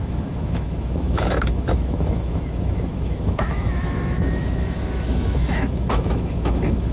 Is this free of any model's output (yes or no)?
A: no